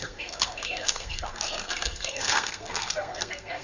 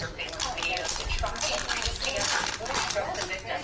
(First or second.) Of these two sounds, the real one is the second